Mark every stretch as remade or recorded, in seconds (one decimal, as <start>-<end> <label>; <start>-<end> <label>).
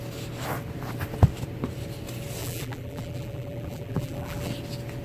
0.0-2.4 recorded; 2.4-4.5 remade; 4.5-5.0 recorded